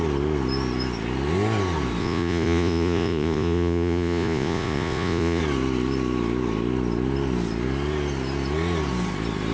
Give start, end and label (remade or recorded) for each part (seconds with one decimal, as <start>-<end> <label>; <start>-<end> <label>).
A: 0.0-2.0 recorded; 2.0-5.4 remade; 5.4-9.5 recorded